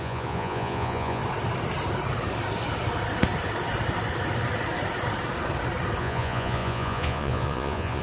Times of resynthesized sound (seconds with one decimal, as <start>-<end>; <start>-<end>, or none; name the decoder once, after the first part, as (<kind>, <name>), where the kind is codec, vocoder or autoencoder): 0.0-1.2 (vocoder, Vocos); 6.0-8.0